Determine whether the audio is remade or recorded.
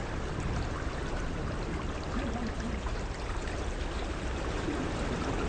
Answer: recorded